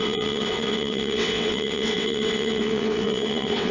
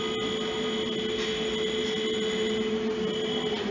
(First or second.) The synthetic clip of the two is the first